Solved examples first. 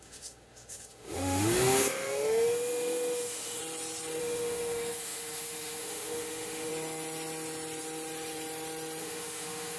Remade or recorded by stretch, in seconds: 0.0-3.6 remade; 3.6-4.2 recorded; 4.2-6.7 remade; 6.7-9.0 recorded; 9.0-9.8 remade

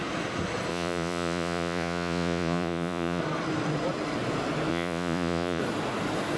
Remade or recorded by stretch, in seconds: 0.0-0.7 recorded; 0.7-3.2 remade; 3.2-4.7 recorded; 4.7-5.6 remade; 5.6-6.4 recorded

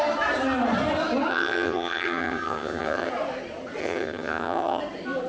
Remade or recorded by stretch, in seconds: 0.0-1.3 recorded; 1.3-3.1 remade; 3.1-3.8 recorded; 3.8-4.8 remade; 4.8-5.3 recorded

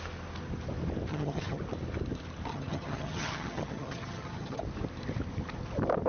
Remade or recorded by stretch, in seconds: 0.0-1.1 recorded; 1.1-1.6 remade; 1.6-2.5 recorded; 2.5-4.6 remade; 4.6-6.1 recorded

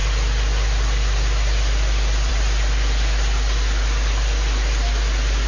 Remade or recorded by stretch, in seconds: 0.0-5.5 recorded

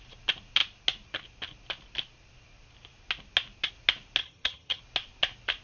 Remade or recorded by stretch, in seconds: 0.0-4.2 recorded; 4.2-4.8 remade; 4.8-5.6 recorded

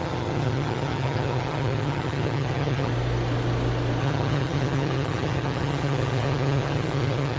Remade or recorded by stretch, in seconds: 0.0-2.9 remade; 2.9-4.0 recorded; 4.0-7.4 remade

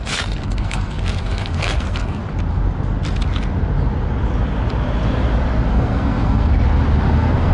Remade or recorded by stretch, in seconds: 0.0-2.2 remade; 2.2-5.7 recorded; 5.7-6.5 remade; 6.5-7.1 recorded; 7.1-7.5 remade